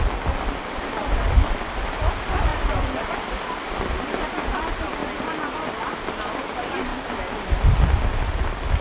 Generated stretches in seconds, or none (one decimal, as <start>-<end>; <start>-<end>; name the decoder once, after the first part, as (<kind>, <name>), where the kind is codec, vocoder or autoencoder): none